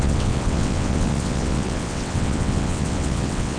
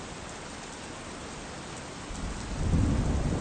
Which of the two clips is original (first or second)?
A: second